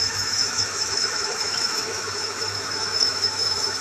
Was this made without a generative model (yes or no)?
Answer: no